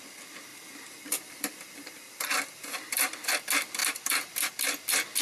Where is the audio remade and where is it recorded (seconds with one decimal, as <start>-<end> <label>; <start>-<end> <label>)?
0.0-0.5 recorded; 0.5-3.4 remade; 3.4-3.8 recorded; 3.8-4.5 remade; 4.5-5.2 recorded